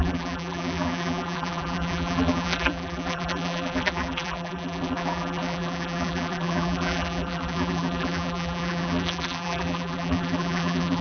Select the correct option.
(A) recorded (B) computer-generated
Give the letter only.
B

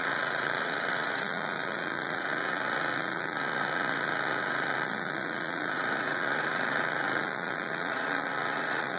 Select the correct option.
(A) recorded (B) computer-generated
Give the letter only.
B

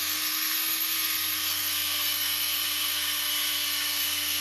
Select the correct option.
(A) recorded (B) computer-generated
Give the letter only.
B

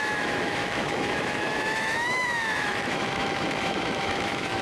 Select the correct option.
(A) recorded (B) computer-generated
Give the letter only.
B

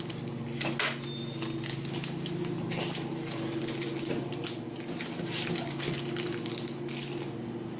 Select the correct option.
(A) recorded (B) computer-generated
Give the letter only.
A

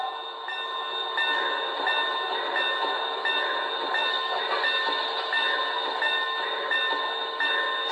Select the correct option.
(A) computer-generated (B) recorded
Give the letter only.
B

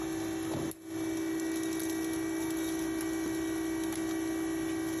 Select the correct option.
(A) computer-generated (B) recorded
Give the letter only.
B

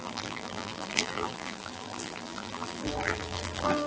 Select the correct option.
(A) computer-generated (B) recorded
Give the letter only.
A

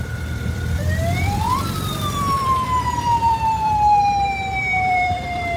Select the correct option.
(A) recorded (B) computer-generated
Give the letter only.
B